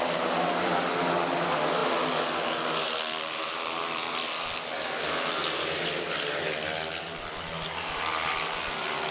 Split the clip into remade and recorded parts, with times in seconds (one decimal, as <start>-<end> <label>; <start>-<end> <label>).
0.0-9.1 remade